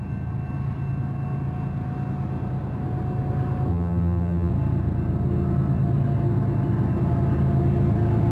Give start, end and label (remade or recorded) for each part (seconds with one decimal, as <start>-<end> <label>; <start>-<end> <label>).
0.0-3.7 recorded; 3.7-4.5 remade; 4.5-8.3 recorded